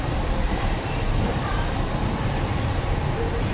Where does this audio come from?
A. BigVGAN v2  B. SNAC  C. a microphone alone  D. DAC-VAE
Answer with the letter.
A